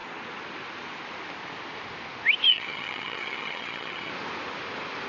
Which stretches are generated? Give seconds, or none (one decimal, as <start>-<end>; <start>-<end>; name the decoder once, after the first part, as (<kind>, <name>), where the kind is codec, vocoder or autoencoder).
2.5-4.1 (vocoder, HiFi-GAN)